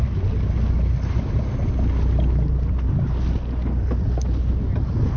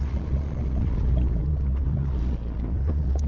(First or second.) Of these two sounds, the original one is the first